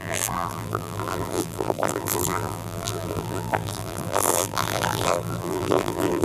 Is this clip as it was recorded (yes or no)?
no